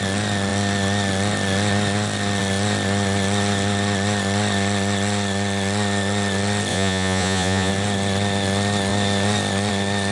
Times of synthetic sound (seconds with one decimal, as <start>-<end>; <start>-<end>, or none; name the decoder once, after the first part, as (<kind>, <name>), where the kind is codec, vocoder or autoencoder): 6.7-7.7 (vocoder, Vocos)